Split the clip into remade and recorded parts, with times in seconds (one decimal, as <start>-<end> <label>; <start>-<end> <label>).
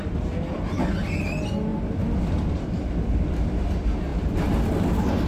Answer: 0.0-5.3 recorded